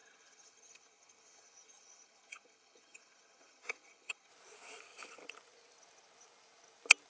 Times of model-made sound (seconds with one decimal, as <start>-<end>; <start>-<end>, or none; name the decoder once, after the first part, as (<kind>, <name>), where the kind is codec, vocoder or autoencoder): 0.0-4.3 (vocoder, HiFi-GAN)